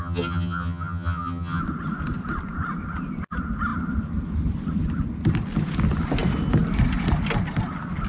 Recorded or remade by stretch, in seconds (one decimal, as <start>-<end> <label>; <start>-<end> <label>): 0.0-1.6 remade; 1.6-8.1 recorded